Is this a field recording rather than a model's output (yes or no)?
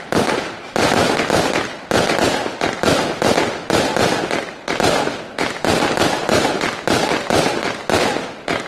yes